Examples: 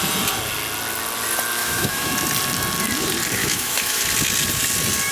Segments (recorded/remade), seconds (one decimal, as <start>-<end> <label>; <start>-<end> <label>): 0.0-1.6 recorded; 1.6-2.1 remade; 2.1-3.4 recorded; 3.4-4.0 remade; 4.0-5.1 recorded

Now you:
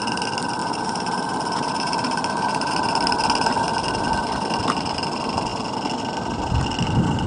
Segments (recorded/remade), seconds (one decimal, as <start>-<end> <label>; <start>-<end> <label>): 0.0-0.6 recorded; 0.6-2.7 remade; 2.7-7.3 recorded

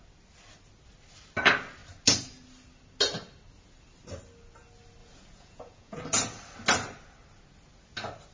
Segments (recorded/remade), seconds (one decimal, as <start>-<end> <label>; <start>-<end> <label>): 0.0-5.0 recorded; 5.0-6.0 remade; 6.0-8.3 recorded

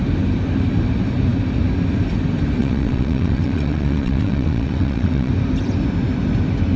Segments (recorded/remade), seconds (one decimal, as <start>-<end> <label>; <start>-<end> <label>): 0.0-2.6 recorded; 2.6-5.3 remade; 5.3-6.8 recorded

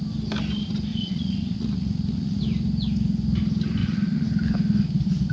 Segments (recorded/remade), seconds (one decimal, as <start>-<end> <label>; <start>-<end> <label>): 0.0-0.9 recorded; 0.9-2.4 remade; 2.4-3.8 recorded; 3.8-4.3 remade; 4.3-5.3 recorded

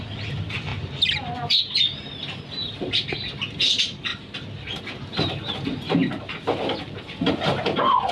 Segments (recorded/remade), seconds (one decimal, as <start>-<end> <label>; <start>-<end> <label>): 0.0-8.1 recorded